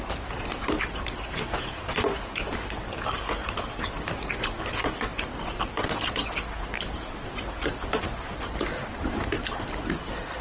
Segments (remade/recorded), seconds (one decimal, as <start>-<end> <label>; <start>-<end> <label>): 0.0-10.4 recorded